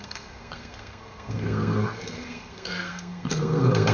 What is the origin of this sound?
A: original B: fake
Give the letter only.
B